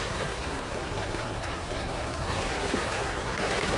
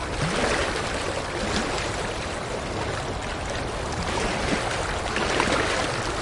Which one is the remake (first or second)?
first